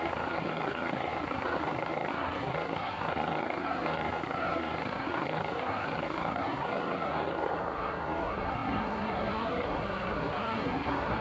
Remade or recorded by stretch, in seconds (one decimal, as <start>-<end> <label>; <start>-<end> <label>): 0.0-11.2 remade